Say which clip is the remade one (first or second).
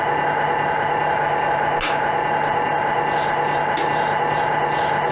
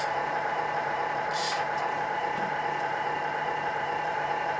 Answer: second